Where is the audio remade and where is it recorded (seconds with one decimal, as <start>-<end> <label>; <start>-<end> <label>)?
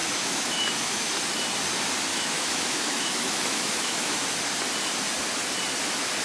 0.0-1.1 remade; 1.1-2.1 recorded; 2.1-4.1 remade; 4.1-6.2 recorded